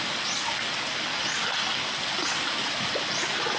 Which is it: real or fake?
real